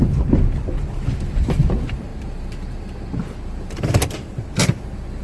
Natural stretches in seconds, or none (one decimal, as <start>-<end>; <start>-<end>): 0.0-5.2